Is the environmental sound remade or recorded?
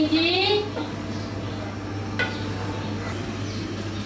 recorded